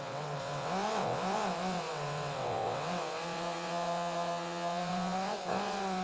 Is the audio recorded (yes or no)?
no